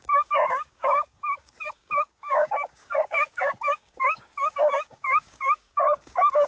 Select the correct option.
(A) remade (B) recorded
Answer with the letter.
A